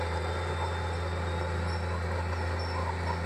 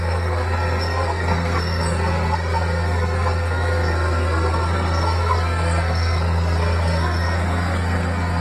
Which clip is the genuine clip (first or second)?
first